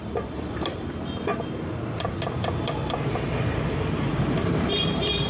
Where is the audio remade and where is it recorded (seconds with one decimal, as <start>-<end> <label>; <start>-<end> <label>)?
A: 0.0-1.3 remade; 1.3-4.2 recorded; 4.2-5.3 remade